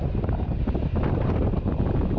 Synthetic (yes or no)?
no